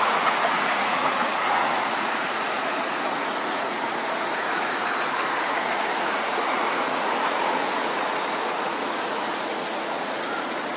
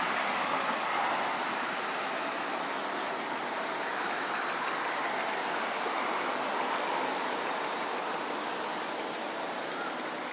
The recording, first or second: second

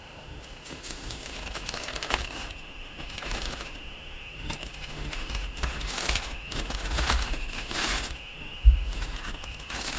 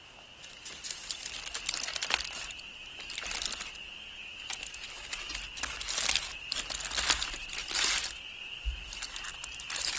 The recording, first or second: second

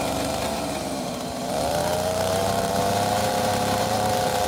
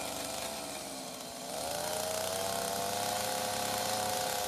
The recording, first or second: second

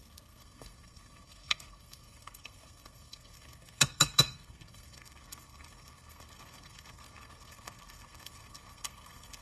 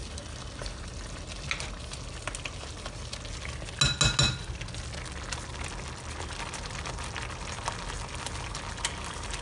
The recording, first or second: second